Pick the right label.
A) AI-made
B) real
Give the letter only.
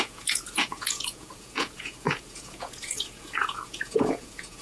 A